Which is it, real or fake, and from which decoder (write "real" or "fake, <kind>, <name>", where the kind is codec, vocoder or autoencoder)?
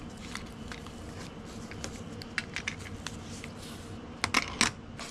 real